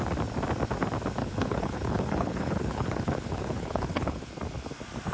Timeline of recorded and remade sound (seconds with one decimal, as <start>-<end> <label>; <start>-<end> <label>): 0.0-1.2 recorded; 1.2-4.3 remade; 4.3-5.1 recorded